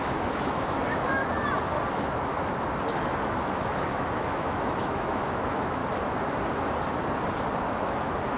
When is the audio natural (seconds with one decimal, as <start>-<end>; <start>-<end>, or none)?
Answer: 1.2-1.9; 2.3-3.0; 5.8-7.8